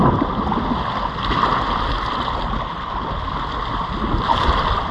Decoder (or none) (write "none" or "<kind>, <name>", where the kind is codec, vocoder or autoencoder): none